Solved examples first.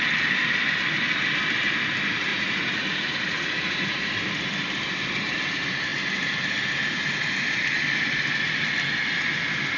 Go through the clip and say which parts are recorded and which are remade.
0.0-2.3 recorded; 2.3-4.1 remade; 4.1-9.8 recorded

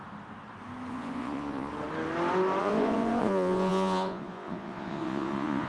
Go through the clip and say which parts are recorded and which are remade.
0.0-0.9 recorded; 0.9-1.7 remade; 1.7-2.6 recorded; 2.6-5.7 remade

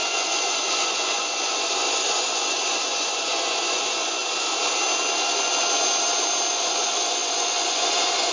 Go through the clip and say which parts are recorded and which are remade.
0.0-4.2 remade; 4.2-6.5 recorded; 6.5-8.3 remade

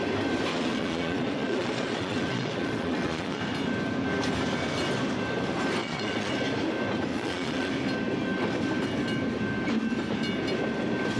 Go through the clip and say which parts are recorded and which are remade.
0.0-0.5 recorded; 0.5-3.4 remade; 3.4-5.8 recorded; 5.8-6.3 remade; 6.3-7.1 recorded; 7.1-7.7 remade; 7.7-11.2 recorded

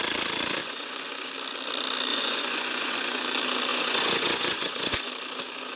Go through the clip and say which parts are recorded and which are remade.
0.0-0.6 recorded; 0.6-1.3 remade; 1.3-2.1 recorded; 2.1-3.2 remade; 3.2-3.7 recorded; 3.7-5.1 remade; 5.1-5.8 recorded

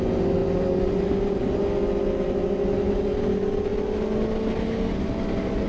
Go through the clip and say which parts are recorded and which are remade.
0.0-5.7 recorded

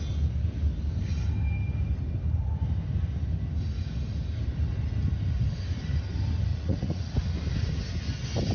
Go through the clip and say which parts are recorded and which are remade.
0.0-6.5 recorded; 6.5-7.1 remade; 7.1-8.5 recorded